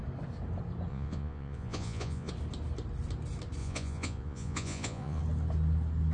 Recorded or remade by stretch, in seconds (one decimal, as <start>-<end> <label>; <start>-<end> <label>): 0.0-0.9 recorded; 0.9-2.3 remade; 2.3-3.6 recorded; 3.6-5.2 remade; 5.2-6.1 recorded